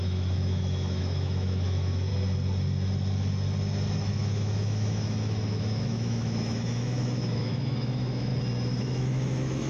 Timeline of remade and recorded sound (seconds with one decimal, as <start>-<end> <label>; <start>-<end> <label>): 0.0-2.1 remade; 2.1-4.1 recorded; 4.1-8.3 remade; 8.3-8.8 recorded; 8.8-9.7 remade

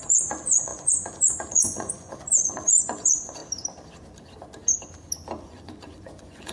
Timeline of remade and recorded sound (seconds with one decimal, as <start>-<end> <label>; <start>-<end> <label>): 0.0-3.4 remade; 3.4-5.4 recorded; 5.4-6.5 remade

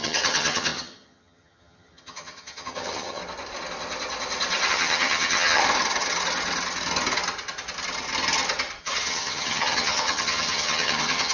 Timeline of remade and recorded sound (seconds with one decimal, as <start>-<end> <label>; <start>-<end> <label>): 0.0-3.2 remade; 3.2-4.7 recorded; 4.7-5.6 remade; 5.6-8.8 recorded; 8.8-11.3 remade

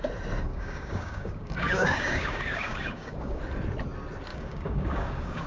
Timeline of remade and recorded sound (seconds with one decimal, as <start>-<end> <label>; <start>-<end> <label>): 0.0-0.5 recorded; 0.5-3.4 remade; 3.4-4.3 recorded; 4.3-5.5 remade

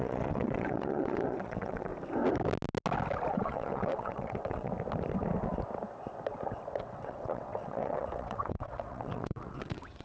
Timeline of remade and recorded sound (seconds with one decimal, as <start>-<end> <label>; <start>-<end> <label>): 0.0-1.9 remade; 1.9-3.3 recorded; 3.3-4.7 remade; 4.7-6.8 recorded; 6.8-10.0 remade

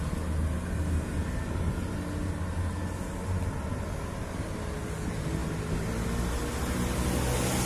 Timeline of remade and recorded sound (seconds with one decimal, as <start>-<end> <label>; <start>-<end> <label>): 0.0-7.7 recorded